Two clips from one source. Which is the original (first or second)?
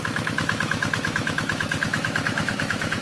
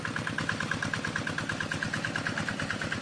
second